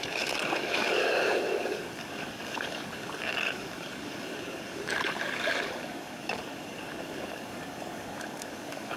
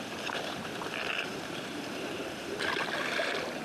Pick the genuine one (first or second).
second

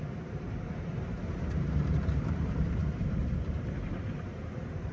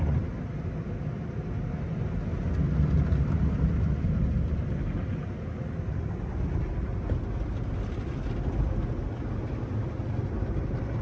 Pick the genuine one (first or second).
second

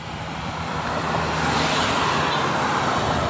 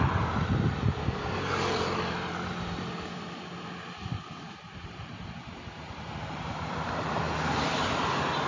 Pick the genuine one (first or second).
first